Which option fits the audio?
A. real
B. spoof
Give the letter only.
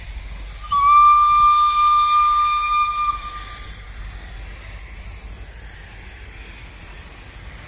A